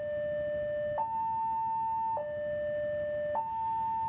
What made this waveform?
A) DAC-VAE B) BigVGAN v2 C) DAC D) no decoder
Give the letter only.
D